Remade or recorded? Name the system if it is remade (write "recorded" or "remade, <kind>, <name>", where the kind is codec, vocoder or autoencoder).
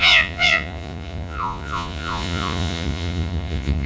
remade, vocoder, Vocos